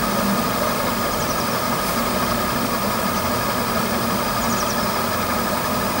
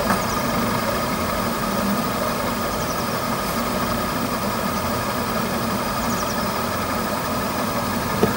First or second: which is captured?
first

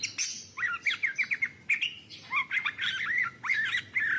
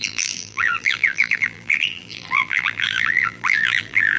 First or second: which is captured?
first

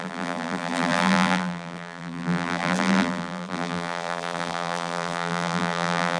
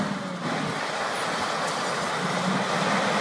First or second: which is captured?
second